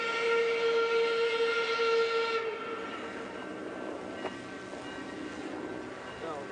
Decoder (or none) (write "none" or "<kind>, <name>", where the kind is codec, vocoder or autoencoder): none